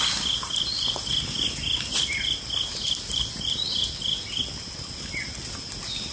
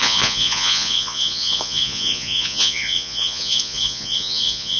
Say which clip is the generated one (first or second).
second